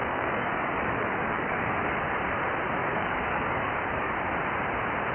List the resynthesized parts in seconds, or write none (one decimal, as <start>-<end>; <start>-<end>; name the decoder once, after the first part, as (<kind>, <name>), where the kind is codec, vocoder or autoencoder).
0.0-1.8 (codec, DAC); 2.8-4.1